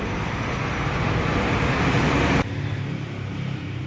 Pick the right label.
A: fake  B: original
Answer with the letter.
A